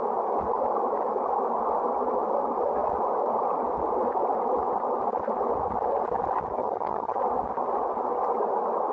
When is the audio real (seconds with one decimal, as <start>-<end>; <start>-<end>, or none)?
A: 0.0-6.6; 7.2-8.9